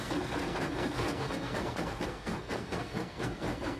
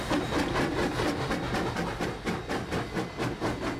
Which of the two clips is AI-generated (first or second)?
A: first